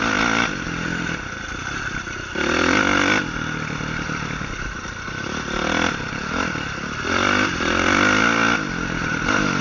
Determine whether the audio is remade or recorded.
remade